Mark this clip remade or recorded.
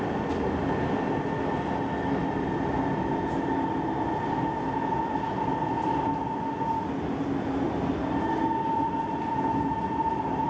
recorded